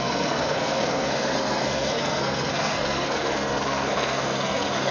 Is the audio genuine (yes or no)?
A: no